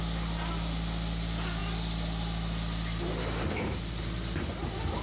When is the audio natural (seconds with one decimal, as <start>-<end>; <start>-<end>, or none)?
0.0-5.0